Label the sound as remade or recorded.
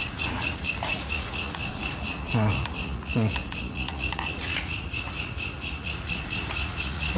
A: remade